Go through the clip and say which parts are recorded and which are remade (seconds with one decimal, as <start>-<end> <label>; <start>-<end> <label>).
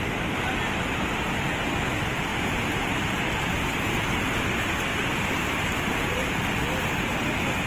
0.0-2.3 recorded; 2.3-3.2 remade; 3.2-4.9 recorded; 4.9-6.5 remade; 6.5-7.7 recorded